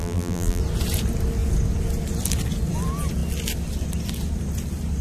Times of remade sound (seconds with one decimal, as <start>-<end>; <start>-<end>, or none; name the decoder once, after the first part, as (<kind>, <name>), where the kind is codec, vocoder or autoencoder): 0.0-0.6 (vocoder, BigVGAN v2)

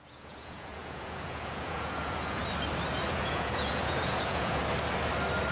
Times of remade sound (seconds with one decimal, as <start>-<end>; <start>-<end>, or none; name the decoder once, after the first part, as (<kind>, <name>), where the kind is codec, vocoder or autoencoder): 0.0-2.4 (vocoder, Vocos); 3.1-4.6